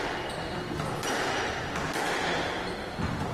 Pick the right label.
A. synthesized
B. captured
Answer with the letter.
B